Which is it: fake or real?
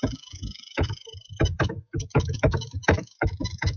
fake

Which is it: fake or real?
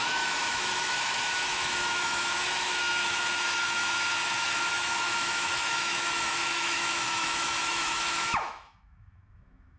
fake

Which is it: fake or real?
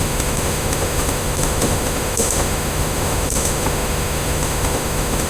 fake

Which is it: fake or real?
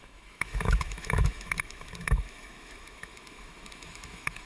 fake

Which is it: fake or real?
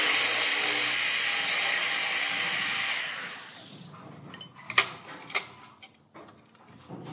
real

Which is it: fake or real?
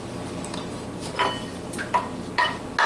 real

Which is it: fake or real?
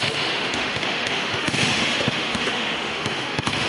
fake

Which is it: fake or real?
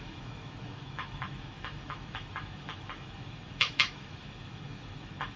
fake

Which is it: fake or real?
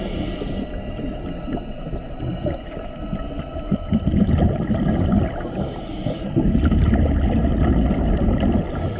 real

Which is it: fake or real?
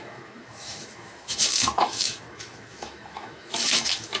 fake